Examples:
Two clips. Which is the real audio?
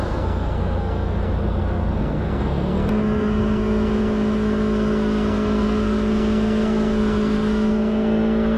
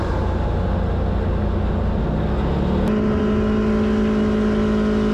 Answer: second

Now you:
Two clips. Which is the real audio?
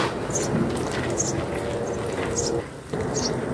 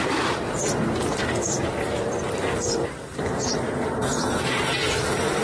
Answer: first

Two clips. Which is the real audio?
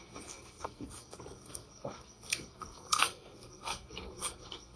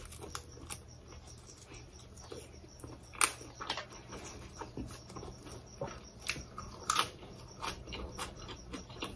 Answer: second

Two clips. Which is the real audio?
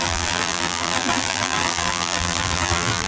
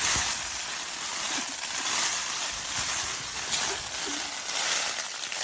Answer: second